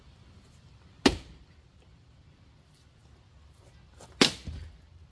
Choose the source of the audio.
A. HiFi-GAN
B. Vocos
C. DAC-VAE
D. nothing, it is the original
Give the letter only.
D